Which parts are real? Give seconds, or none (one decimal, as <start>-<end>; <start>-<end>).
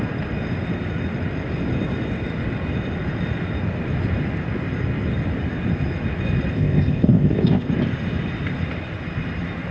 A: 0.0-6.5; 7.7-9.7